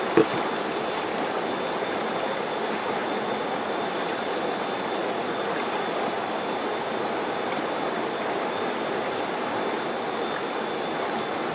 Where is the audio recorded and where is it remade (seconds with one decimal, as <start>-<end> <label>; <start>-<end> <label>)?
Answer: 0.0-3.0 recorded; 3.0-3.8 remade; 3.8-5.0 recorded; 5.0-5.7 remade; 5.7-11.5 recorded